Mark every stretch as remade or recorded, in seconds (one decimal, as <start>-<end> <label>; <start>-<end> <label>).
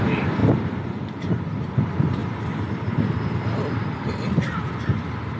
0.0-5.4 remade